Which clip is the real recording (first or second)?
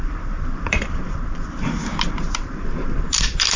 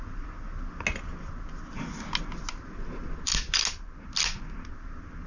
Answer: second